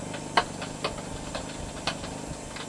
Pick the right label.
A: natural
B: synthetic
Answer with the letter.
A